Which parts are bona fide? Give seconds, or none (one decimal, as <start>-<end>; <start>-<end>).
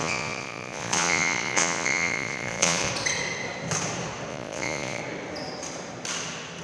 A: 2.9-4.3; 5.0-6.6